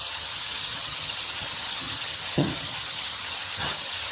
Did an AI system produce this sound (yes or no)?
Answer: yes